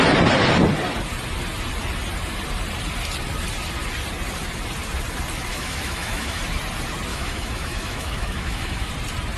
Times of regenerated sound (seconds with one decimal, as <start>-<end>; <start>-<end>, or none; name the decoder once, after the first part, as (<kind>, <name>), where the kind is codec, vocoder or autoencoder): 5.5-6.4 (autoencoder, DAC-VAE); 7.1-8.9